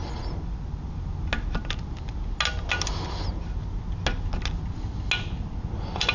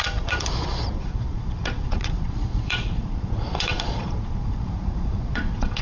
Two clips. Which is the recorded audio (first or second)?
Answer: first